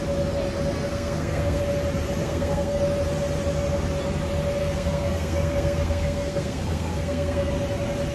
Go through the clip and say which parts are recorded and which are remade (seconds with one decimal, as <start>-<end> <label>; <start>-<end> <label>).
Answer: 0.0-0.9 recorded; 0.9-1.6 remade; 1.6-2.2 recorded; 2.2-2.8 remade; 2.8-4.6 recorded; 4.6-7.5 remade; 7.5-8.1 recorded